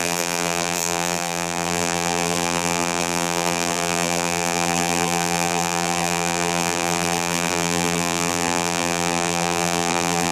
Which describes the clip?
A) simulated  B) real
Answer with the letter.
A